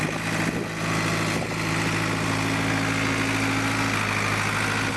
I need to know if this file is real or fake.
real